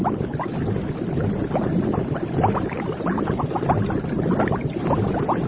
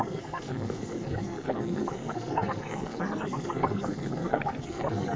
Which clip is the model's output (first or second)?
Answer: second